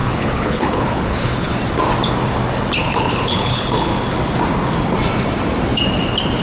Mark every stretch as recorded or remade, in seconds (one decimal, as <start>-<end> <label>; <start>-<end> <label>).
0.0-1.5 remade; 1.5-2.8 recorded; 2.8-3.9 remade; 3.9-6.4 recorded